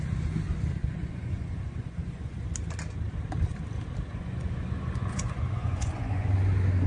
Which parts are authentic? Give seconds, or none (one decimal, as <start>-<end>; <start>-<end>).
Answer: 0.0-0.8; 2.4-4.1; 6.3-6.9